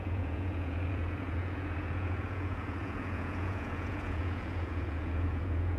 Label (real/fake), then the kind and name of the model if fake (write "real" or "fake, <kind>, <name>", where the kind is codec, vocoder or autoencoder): fake, vocoder, Vocos